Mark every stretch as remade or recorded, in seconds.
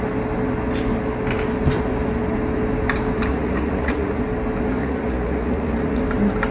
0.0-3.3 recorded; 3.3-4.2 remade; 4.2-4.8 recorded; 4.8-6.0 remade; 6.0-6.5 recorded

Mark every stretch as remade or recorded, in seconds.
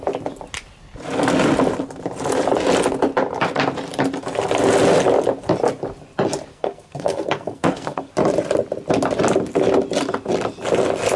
0.0-6.5 recorded; 6.5-8.1 remade; 8.1-11.2 recorded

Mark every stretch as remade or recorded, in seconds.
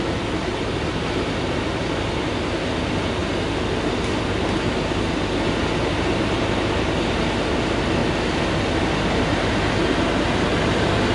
0.0-0.5 recorded; 0.5-1.8 remade; 1.8-11.1 recorded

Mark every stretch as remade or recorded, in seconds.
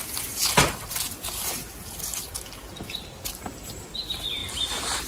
0.0-5.1 recorded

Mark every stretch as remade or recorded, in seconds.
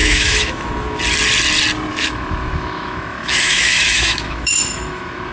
0.0-1.0 remade; 1.0-1.9 recorded; 1.9-5.3 remade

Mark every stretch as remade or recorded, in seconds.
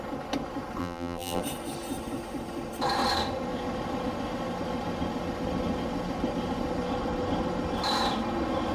0.0-0.8 recorded; 0.8-1.4 remade; 1.4-8.7 recorded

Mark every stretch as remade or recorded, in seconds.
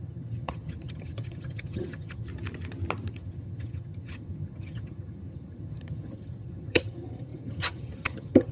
0.0-2.3 remade; 2.3-3.1 recorded; 3.1-8.5 remade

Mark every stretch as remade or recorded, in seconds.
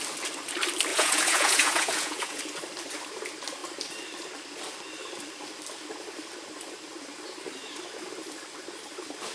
0.0-0.9 recorded; 0.9-2.4 remade; 2.4-9.3 recorded